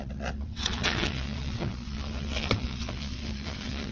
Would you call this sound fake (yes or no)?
yes